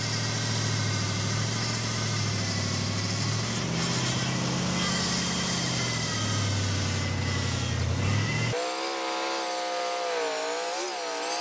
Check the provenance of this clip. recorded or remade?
recorded